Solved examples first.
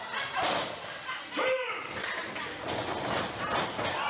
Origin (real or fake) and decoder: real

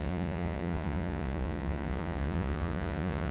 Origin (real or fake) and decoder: fake, vocoder, Vocos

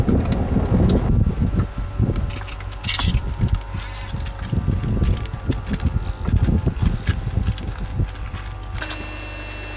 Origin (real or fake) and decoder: real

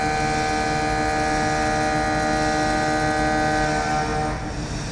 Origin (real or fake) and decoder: real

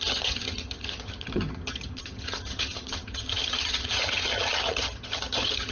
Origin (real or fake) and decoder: fake, vocoder, HiFi-GAN